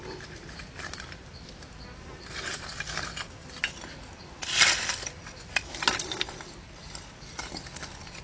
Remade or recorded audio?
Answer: recorded